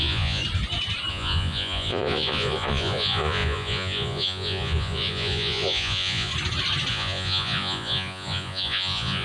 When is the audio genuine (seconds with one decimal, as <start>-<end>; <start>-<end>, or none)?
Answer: 0.4-1.1; 6.3-6.9